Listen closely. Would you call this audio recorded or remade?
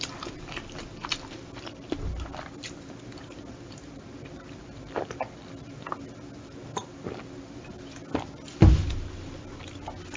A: recorded